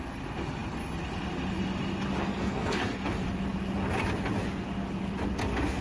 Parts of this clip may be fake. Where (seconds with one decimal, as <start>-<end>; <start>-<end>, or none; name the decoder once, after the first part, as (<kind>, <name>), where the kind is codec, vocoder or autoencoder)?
2.2-3.0 (codec, SNAC)